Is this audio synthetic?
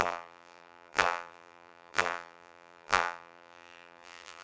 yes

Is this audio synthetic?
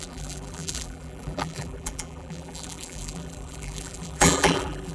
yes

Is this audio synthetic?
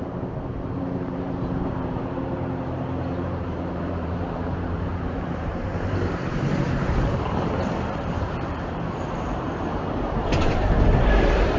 yes